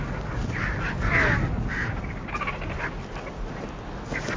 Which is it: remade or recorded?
recorded